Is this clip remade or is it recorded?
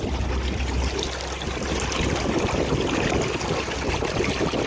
recorded